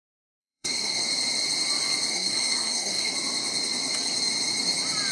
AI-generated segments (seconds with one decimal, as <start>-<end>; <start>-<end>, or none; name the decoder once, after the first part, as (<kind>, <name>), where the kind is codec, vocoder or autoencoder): 0.4-1.0 (codec, SNAC); 2.1-3.1